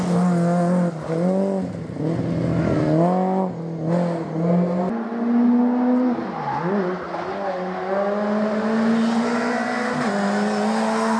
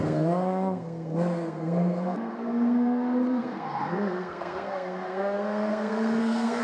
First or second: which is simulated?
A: second